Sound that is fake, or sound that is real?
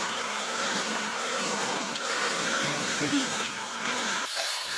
fake